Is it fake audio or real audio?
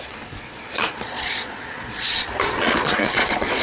fake